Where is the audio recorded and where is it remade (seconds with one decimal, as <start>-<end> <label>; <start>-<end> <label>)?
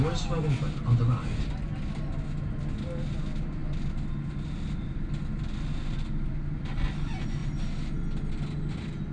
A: 0.0-9.1 recorded